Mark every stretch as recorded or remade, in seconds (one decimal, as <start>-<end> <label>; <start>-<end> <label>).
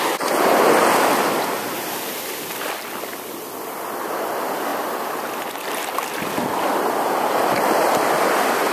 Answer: 0.0-8.7 recorded